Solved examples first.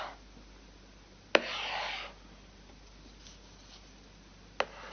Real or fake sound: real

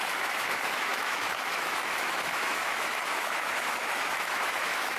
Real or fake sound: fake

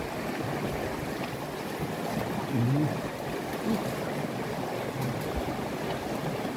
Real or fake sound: real